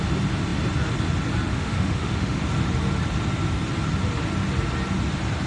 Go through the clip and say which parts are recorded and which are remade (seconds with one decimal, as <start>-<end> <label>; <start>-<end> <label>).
0.0-1.5 recorded; 1.5-2.4 remade; 2.4-5.5 recorded